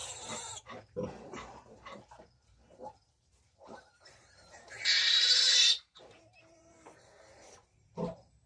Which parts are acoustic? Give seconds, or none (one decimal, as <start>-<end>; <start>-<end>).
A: none